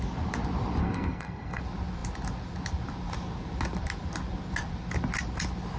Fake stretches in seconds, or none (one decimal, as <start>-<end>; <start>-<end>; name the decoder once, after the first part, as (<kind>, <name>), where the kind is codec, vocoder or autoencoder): 0.8-1.6 (codec, SNAC)